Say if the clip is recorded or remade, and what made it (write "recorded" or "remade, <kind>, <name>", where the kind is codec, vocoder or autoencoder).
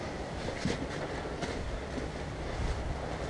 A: recorded